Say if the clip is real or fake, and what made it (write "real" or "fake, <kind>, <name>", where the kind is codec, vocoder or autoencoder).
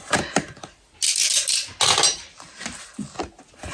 real